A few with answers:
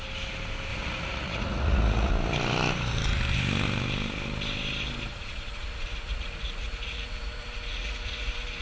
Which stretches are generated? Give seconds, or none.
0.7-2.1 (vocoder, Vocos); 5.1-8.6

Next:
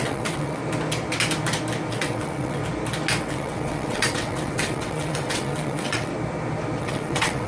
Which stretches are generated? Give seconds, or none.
0.0-0.6 (vocoder, WaveNeXt); 1.9-2.6; 3.2-6.1; 6.8-7.5

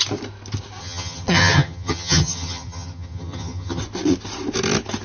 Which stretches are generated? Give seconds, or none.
0.8-3.8 (vocoder, HiFi-GAN)

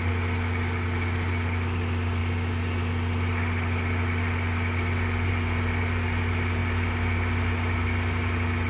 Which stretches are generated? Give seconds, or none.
none

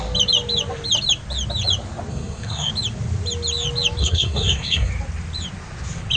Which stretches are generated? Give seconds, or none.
2.1-2.7 (codec, SNAC); 4.0-4.9

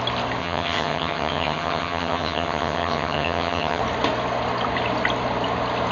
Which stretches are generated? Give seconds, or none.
0.4-3.8 (vocoder, HiFi-GAN)

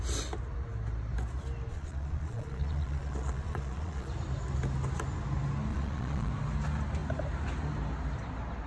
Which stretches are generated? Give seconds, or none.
1.7-4.1 (vocoder, Vocos); 5.7-6.3